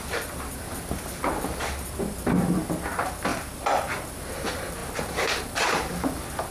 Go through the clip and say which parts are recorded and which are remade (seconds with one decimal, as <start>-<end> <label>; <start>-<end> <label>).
0.0-3.3 recorded; 3.3-4.1 remade; 4.1-4.8 recorded; 4.8-5.4 remade; 5.4-6.5 recorded